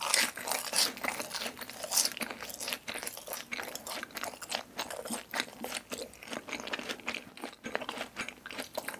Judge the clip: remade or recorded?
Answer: recorded